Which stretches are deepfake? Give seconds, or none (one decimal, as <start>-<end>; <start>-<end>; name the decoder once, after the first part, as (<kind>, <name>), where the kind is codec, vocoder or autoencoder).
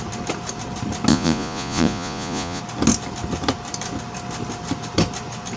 1.1-2.6 (vocoder, Vocos)